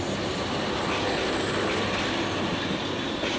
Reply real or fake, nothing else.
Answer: real